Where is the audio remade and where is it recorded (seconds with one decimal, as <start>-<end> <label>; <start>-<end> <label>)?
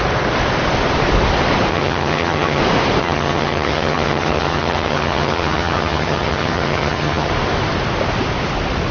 0.0-1.7 recorded; 1.7-2.6 remade; 2.6-3.0 recorded; 3.0-7.3 remade; 7.3-8.9 recorded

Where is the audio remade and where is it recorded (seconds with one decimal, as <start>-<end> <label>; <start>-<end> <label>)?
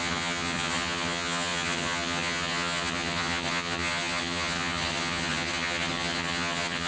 0.0-6.9 remade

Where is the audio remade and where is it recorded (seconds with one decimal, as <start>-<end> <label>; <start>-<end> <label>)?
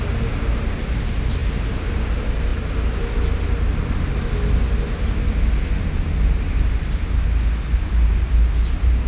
0.0-9.1 recorded